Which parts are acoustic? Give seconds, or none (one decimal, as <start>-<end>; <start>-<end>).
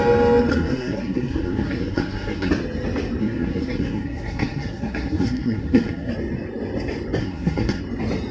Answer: 0.0-0.5; 2.5-3.2; 6.1-7.2; 7.8-8.3